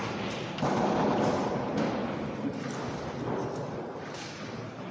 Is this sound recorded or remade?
recorded